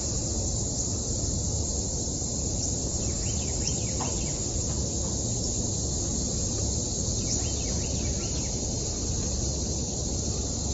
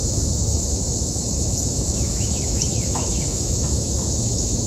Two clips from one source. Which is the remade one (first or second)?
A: second